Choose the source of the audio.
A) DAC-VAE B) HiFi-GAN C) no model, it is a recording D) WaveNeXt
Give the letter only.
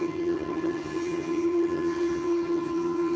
B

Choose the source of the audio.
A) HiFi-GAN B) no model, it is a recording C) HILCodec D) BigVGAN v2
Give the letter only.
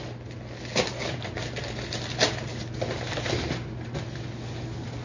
B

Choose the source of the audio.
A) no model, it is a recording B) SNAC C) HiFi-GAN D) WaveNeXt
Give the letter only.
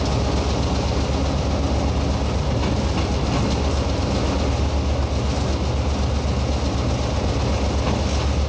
A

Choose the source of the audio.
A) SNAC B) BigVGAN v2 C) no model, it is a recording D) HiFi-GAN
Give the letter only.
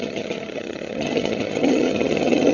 D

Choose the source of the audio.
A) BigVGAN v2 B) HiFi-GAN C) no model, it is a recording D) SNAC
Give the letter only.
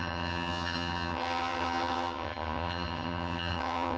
B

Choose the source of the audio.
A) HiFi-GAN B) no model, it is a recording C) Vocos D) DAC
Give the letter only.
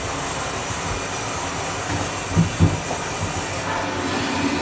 B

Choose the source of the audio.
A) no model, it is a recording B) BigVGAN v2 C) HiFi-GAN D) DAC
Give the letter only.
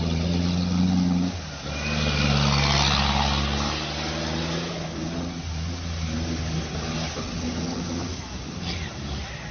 A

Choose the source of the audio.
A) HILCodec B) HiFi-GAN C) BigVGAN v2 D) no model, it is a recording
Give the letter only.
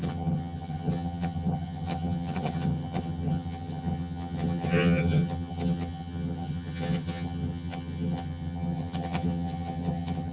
B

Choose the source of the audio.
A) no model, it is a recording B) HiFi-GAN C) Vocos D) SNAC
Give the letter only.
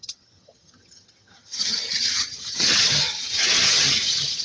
B